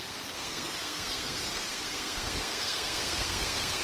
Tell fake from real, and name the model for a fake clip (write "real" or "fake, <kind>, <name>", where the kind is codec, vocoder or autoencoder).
fake, codec, SNAC